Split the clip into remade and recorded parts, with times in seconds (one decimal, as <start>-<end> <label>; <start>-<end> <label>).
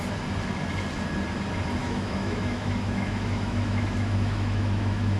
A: 0.0-1.8 recorded; 1.8-5.2 remade